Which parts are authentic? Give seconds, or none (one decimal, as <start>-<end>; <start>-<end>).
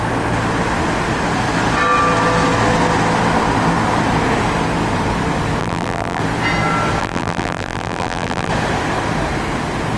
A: 0.0-5.6; 6.2-7.0; 8.5-10.0